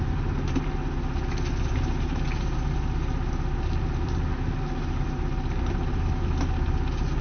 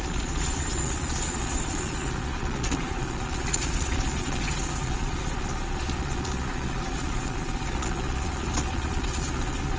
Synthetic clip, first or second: second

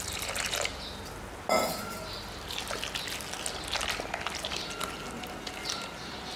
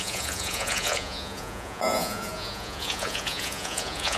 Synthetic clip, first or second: second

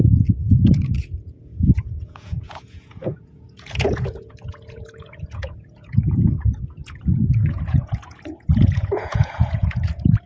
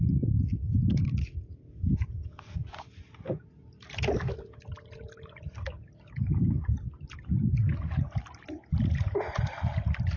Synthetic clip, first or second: first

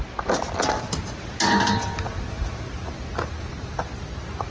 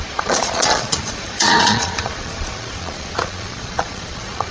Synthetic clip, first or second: second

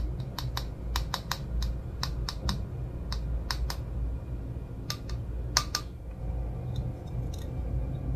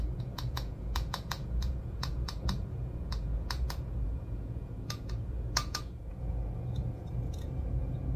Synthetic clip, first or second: second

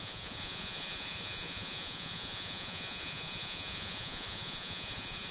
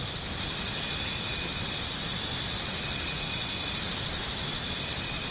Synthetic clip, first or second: first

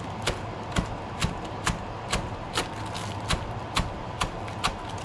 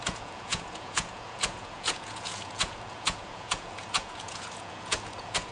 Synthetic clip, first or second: second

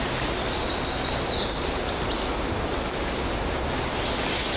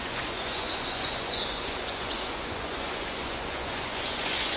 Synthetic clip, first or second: second